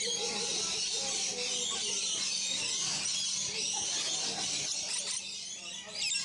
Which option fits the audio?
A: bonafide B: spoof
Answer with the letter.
A